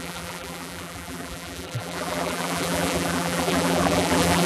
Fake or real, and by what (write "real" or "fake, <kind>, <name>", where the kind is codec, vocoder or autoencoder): fake, vocoder, BigVGAN v2